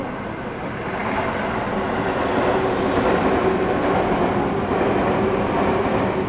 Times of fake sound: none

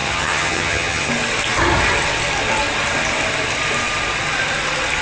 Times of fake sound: 0.0-1.1 (vocoder, HiFi-GAN)

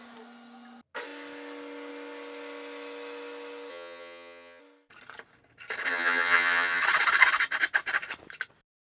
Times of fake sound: 3.7-4.6 (vocoder, HiFi-GAN); 5.9-6.8

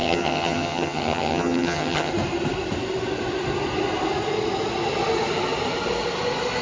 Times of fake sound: 0.0-2.1 (vocoder, HiFi-GAN)